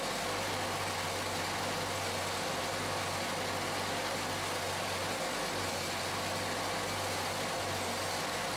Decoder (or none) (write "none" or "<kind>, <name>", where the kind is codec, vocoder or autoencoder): none